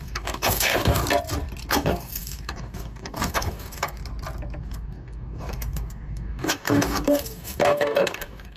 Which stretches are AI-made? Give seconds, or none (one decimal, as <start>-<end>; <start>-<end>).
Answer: 0.0-1.0; 1.7-4.0; 4.6-8.6